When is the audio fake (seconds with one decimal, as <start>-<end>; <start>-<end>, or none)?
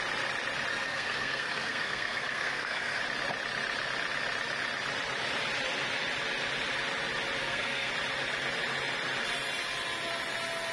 0.7-3.0; 7.4-7.9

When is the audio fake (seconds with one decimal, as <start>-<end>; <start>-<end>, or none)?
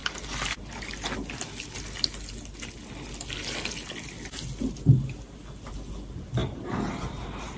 6.4-7.6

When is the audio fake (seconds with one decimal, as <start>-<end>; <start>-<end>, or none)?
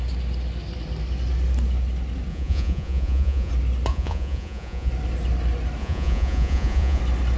2.3-3.5; 3.9-4.9; 5.8-7.0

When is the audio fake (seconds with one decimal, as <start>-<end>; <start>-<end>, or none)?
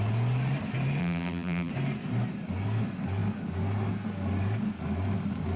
1.0-1.7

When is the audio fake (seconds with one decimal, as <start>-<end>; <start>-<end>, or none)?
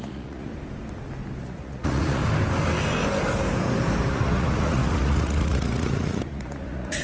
0.0-0.5; 1.4-2.2; 4.1-7.0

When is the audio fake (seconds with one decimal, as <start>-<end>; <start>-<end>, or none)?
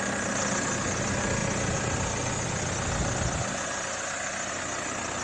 none